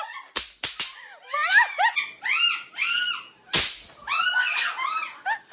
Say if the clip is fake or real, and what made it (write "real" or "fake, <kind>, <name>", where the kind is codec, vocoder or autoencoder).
real